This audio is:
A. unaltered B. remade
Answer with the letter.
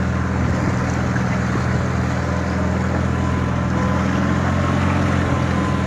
A